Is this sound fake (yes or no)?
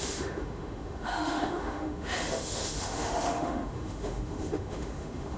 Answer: yes